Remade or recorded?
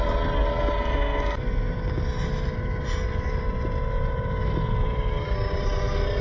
recorded